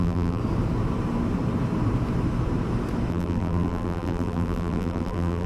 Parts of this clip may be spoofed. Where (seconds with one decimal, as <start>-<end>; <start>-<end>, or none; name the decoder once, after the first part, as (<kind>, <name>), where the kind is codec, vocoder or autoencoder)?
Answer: 0.0-0.4 (vocoder, BigVGAN v2); 3.1-5.5